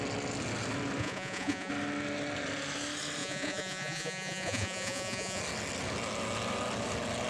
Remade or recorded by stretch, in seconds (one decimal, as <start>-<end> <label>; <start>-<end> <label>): 0.0-1.0 recorded; 1.0-1.7 remade; 1.7-3.2 recorded; 3.2-5.4 remade; 5.4-7.3 recorded